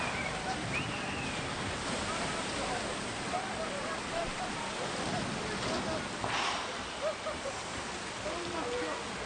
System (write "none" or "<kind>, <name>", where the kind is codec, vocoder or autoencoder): none